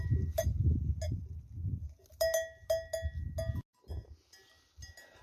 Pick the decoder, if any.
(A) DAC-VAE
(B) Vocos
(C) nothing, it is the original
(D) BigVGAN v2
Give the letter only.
C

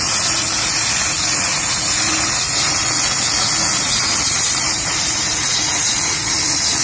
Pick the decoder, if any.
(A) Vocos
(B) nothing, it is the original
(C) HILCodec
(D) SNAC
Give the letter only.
A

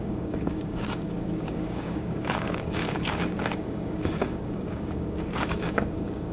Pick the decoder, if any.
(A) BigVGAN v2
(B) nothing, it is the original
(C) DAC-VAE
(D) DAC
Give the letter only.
D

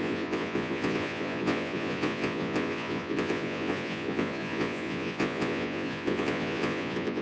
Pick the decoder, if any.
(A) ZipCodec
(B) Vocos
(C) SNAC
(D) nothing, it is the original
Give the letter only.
B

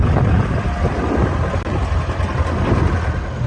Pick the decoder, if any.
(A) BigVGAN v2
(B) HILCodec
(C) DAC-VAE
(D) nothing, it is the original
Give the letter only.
D